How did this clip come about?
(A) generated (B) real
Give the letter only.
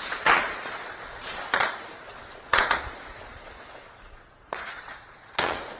A